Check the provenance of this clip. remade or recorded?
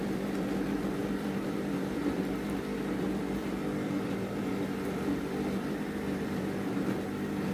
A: remade